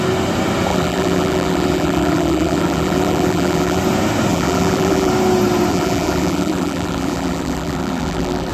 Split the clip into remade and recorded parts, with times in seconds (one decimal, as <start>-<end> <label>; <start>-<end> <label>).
0.0-0.7 recorded; 0.7-3.8 remade; 3.8-4.3 recorded; 4.3-5.1 remade; 5.1-5.7 recorded; 5.7-8.5 remade